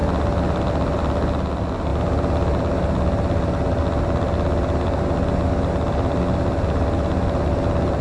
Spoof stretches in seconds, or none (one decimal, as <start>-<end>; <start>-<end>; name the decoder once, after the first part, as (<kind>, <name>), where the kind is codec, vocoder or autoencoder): none